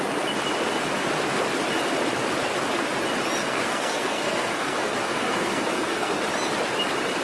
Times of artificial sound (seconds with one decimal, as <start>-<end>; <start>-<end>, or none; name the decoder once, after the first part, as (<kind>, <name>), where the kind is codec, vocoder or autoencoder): 3.4-6.2 (codec, SNAC)